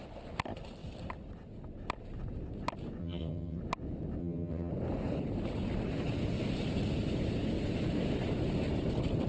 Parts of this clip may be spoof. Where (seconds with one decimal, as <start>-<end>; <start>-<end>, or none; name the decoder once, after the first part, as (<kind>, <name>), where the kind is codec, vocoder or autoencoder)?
3.0-3.6 (vocoder, HiFi-GAN); 4.2-4.7